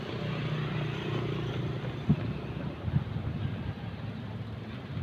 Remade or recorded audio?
recorded